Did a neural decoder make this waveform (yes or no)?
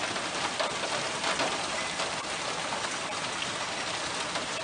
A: no